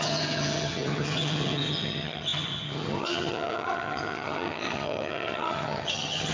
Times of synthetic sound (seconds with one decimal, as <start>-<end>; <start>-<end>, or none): 0.0-6.3